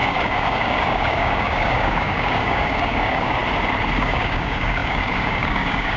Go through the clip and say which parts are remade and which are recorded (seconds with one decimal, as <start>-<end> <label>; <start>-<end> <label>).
0.0-3.4 remade; 3.4-4.0 recorded; 4.0-6.0 remade

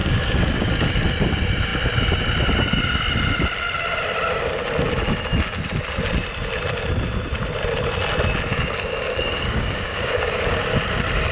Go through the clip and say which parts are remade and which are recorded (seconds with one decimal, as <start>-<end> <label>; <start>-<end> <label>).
0.0-0.7 remade; 0.7-8.5 recorded; 8.5-10.8 remade; 10.8-11.3 recorded

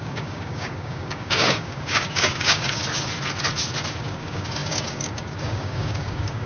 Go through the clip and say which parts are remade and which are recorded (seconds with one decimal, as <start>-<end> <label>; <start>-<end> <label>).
0.0-2.8 remade; 2.8-4.0 recorded; 4.0-6.5 remade

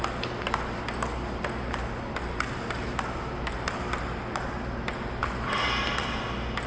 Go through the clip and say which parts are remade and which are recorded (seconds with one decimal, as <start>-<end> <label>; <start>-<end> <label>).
0.0-6.7 recorded

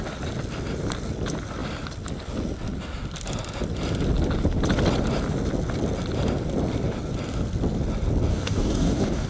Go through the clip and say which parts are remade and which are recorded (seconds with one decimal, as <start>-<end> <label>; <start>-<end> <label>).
0.0-8.3 recorded; 8.3-9.3 remade

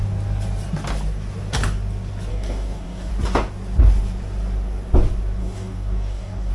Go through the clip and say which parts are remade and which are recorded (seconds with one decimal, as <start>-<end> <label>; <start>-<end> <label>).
0.0-2.3 recorded; 2.3-3.1 remade; 3.1-5.4 recorded; 5.4-6.5 remade

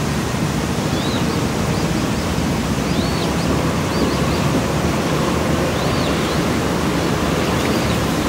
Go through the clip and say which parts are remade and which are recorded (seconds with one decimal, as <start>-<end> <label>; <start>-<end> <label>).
0.0-8.3 recorded

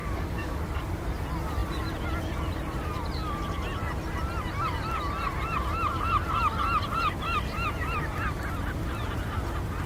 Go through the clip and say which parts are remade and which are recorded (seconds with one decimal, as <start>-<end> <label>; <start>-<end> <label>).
0.0-0.6 remade; 0.6-9.9 recorded